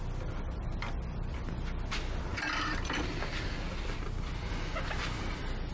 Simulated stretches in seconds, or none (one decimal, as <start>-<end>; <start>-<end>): none